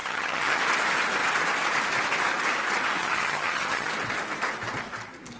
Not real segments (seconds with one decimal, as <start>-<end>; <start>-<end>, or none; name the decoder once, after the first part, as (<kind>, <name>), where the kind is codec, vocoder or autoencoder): 0.0-0.6 (vocoder, HiFi-GAN); 3.0-3.9